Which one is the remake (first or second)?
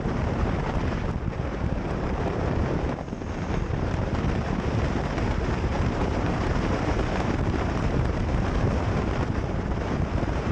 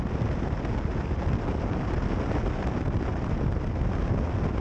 first